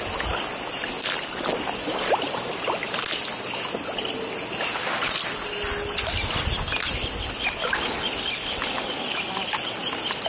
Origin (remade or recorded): recorded